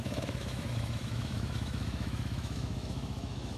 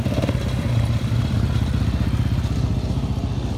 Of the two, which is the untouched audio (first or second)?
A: second